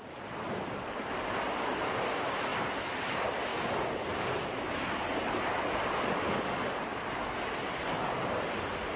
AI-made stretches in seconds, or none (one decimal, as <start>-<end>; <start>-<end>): none